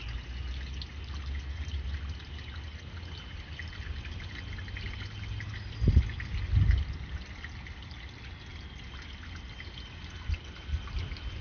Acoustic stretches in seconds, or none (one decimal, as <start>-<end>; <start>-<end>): 0.0-11.4